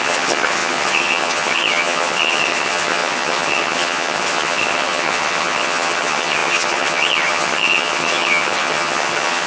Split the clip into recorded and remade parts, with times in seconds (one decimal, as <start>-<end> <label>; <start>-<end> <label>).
0.0-9.5 remade